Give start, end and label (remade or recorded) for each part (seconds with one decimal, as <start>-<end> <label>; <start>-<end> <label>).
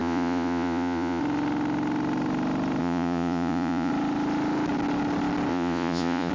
0.0-1.2 remade; 1.2-2.8 recorded; 2.8-3.9 remade; 3.9-5.5 recorded; 5.5-6.3 remade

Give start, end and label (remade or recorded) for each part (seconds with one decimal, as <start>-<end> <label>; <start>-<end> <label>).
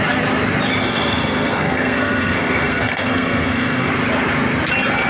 0.0-0.8 recorded; 0.8-3.9 remade; 3.9-5.1 recorded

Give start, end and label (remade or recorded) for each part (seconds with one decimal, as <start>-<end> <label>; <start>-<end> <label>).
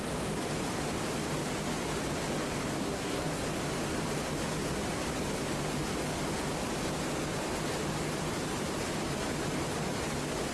0.0-2.8 recorded; 2.8-3.4 remade; 3.4-10.5 recorded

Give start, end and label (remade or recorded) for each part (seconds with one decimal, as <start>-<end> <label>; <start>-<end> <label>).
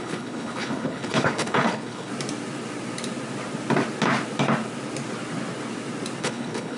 0.0-2.1 remade; 2.1-6.2 recorded; 6.2-6.8 remade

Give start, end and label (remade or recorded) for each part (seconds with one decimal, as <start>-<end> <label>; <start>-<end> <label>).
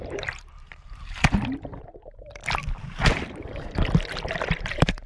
0.0-2.4 remade; 2.4-4.6 recorded; 4.6-5.1 remade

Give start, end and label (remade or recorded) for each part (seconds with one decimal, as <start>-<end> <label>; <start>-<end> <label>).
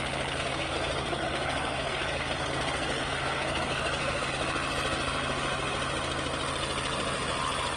0.0-0.4 recorded; 0.4-4.3 remade; 4.3-7.8 recorded